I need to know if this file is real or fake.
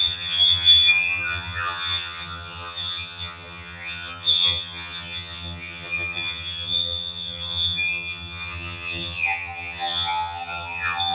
fake